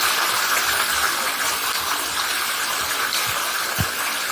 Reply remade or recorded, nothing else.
recorded